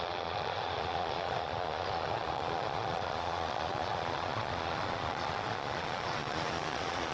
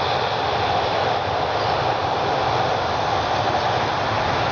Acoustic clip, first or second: second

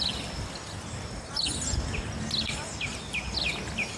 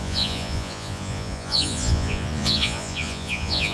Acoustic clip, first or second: first